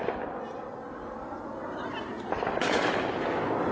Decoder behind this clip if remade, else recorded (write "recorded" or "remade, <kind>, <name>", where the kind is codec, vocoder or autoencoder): recorded